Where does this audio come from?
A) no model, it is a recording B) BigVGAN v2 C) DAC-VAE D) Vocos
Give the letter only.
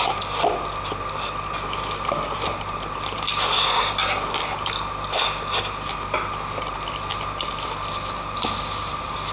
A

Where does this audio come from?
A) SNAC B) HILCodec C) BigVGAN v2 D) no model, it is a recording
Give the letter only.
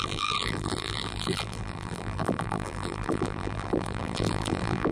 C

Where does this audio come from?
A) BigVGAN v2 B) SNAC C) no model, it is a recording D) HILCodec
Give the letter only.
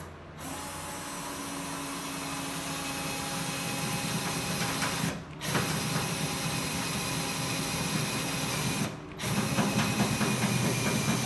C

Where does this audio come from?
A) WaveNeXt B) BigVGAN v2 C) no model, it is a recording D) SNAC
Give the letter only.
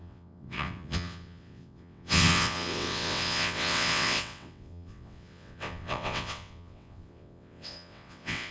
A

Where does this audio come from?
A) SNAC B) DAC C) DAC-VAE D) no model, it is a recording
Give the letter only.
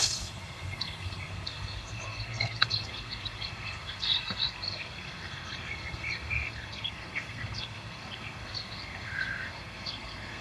A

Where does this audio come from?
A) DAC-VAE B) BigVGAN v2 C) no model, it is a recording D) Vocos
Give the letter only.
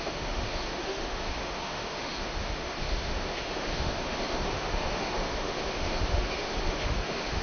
A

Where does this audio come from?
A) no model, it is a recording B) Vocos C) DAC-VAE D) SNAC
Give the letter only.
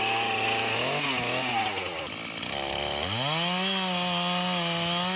A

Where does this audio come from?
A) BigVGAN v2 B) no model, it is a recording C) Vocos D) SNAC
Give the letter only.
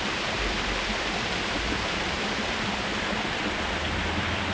A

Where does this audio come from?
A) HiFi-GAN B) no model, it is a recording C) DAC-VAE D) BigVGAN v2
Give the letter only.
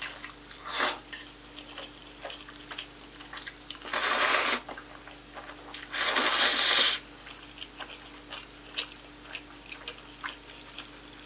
B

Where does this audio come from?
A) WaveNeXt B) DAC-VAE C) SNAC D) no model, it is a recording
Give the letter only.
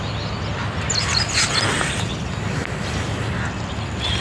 D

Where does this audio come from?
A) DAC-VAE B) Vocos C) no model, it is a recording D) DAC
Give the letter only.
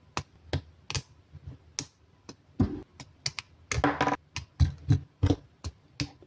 C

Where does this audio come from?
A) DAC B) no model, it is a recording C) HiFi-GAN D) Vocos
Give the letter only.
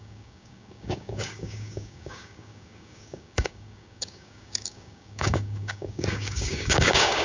A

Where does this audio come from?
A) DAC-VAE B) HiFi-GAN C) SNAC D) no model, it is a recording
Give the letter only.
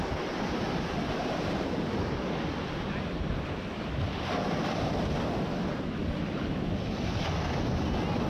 D